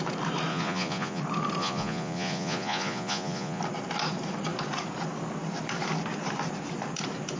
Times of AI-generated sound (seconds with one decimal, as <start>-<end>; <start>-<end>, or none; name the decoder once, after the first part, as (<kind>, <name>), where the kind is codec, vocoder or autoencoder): 0.5-1.2 (vocoder, Vocos); 1.6-3.6